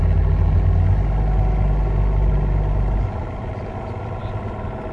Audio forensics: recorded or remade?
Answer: recorded